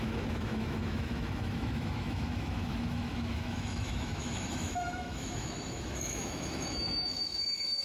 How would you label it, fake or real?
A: fake